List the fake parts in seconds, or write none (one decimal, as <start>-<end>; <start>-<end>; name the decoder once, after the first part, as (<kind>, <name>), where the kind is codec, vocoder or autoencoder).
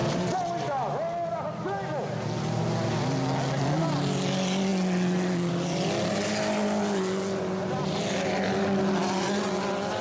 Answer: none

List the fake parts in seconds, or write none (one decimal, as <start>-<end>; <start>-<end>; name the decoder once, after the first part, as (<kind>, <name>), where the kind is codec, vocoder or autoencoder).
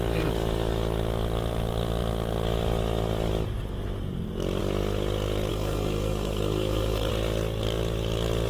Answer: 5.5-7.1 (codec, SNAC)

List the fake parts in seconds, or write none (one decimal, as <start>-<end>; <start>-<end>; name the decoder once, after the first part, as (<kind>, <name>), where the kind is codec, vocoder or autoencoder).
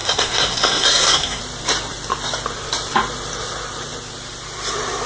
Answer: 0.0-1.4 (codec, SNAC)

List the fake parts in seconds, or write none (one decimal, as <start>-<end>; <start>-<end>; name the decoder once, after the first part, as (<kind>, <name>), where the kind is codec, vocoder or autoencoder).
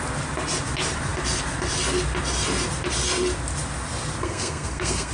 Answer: 4.2-5.1 (codec, SNAC)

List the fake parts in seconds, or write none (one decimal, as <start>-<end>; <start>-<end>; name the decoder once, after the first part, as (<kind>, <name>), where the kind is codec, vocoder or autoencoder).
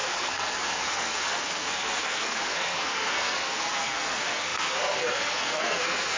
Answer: 0.0-6.2 (codec, SNAC)